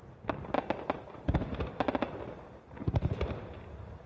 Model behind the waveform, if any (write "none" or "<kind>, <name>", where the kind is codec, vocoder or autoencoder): none